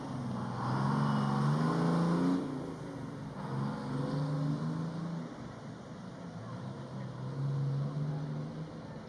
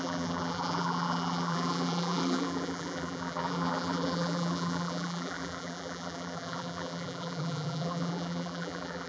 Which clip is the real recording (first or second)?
first